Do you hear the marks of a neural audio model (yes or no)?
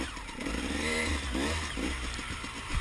yes